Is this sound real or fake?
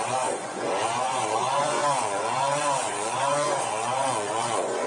fake